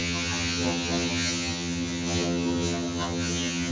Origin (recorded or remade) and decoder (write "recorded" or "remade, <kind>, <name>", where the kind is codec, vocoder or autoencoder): remade, vocoder, HiFi-GAN